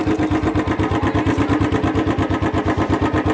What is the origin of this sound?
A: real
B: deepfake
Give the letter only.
A